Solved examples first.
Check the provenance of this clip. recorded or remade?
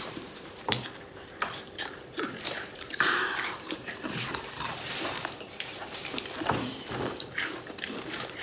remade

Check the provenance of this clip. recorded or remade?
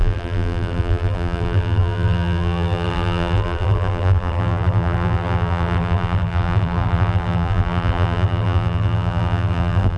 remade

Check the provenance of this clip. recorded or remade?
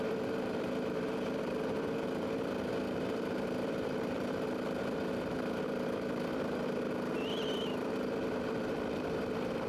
remade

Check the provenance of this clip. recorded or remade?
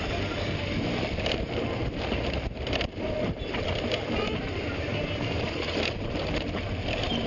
remade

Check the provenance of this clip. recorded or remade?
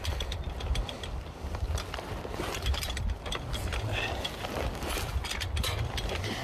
recorded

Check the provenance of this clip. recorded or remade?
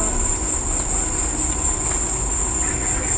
remade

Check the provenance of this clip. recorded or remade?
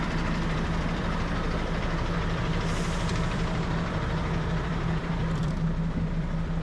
remade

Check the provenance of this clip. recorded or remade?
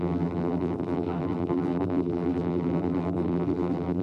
remade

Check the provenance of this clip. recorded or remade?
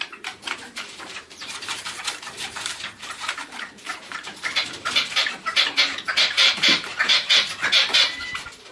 remade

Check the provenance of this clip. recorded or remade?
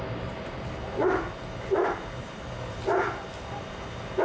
remade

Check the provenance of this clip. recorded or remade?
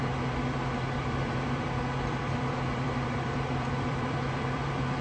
remade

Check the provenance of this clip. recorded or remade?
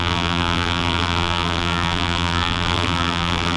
remade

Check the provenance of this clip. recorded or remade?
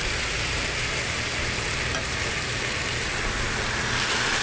remade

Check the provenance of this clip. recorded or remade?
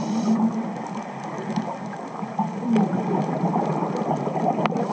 recorded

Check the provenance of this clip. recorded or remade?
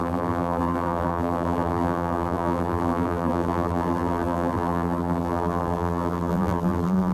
remade